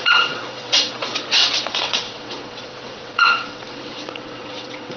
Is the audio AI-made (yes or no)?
yes